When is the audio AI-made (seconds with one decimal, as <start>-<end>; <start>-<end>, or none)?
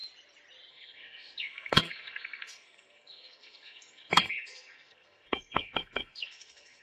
0.7-6.8